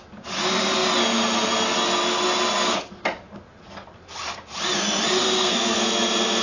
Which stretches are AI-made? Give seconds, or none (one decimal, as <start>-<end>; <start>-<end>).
5.2-5.8